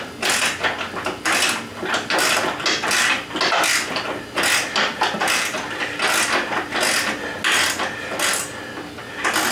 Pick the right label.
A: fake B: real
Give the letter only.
B